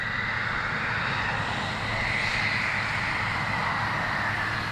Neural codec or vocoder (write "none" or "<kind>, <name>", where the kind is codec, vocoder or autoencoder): none